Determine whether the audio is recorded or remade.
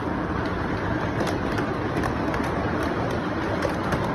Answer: recorded